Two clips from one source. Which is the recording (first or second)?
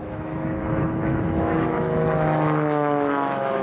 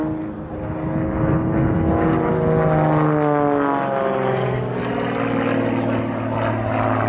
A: second